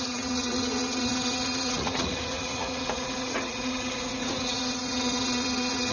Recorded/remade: remade